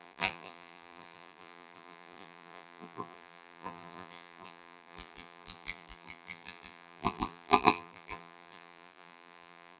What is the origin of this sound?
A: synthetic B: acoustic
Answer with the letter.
A